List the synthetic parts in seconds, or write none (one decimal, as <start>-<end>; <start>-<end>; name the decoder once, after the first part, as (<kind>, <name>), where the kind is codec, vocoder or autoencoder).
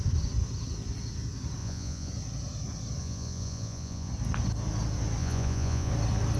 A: 1.6-2.1 (vocoder, Vocos); 3.0-4.1; 5.2-5.9